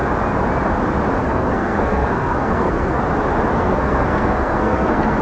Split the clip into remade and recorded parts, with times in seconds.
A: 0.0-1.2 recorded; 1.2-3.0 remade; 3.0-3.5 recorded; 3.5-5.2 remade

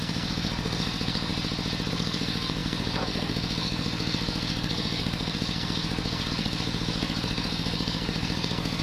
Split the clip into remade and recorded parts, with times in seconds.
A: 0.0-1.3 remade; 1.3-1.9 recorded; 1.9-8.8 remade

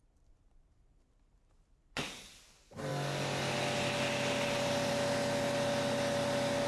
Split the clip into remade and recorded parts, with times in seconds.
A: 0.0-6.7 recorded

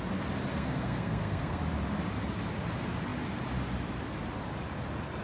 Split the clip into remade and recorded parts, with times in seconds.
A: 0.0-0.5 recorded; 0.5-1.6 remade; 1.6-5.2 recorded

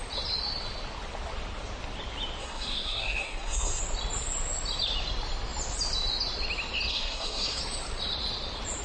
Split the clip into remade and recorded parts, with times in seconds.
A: 0.0-2.4 recorded; 2.4-3.8 remade; 3.8-6.9 recorded; 6.9-7.6 remade; 7.6-8.8 recorded

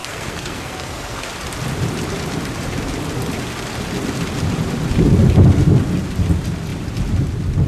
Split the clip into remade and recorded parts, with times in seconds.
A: 0.0-1.3 remade; 1.3-7.7 recorded